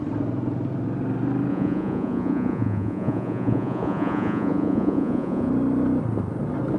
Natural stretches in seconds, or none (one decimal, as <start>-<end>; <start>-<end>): 0.0-1.5; 5.5-6.8

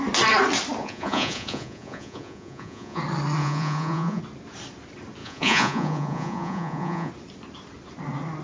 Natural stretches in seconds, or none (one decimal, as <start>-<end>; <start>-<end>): 0.0-0.8; 3.0-3.4; 4.2-5.2; 7.1-8.4

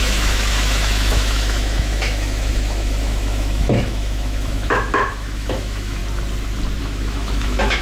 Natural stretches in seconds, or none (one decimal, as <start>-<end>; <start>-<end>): 6.0-6.8

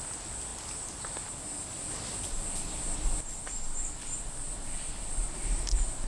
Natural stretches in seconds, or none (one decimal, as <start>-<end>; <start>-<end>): 0.0-6.1